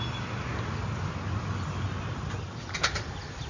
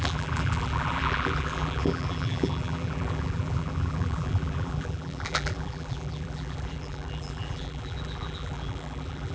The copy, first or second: second